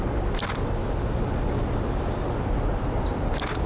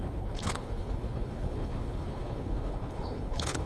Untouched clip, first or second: first